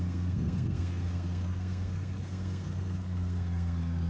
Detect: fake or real fake